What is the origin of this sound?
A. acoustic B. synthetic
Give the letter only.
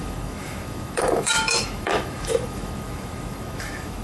B